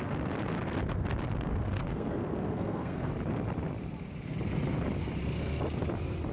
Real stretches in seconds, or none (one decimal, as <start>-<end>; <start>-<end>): 0.0-1.5; 3.1-6.3